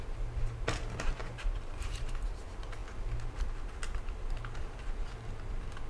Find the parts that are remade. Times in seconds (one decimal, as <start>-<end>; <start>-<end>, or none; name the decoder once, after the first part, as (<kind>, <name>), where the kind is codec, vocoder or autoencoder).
1.2-2.1 (vocoder, BigVGAN v2)